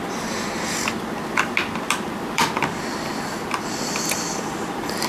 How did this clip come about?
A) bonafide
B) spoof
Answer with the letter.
B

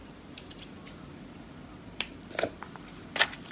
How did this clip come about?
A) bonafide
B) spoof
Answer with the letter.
B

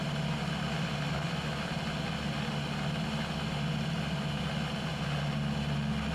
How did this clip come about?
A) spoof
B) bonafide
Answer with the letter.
B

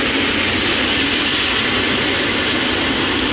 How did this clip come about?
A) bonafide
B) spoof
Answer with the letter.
A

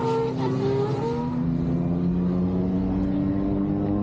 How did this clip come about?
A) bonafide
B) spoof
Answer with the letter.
A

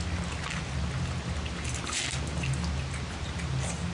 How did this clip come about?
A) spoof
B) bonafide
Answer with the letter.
B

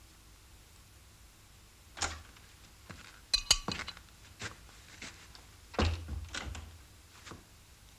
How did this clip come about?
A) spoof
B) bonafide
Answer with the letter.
B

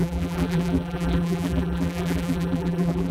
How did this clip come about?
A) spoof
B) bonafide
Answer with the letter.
A